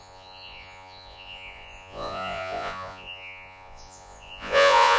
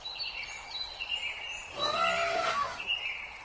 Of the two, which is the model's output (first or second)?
first